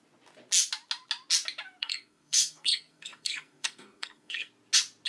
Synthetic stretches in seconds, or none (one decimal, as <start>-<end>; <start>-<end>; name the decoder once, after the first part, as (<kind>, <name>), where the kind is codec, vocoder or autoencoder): 1.8-4.5 (codec, SNAC)